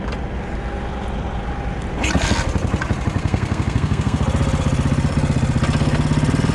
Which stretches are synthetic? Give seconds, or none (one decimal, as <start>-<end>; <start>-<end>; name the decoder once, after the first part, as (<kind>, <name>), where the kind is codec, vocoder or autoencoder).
3.2-4.2 (codec, SNAC)